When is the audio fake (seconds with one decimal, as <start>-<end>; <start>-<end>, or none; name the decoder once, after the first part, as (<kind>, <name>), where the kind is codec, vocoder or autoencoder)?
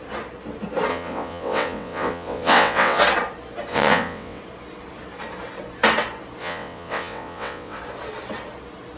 0.9-3.0 (vocoder, WaveNeXt); 3.7-4.4; 6.4-7.8